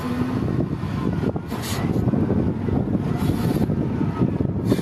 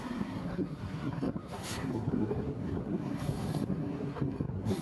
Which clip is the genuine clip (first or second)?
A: first